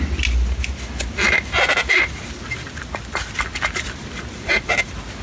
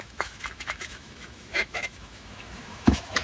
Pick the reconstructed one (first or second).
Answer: second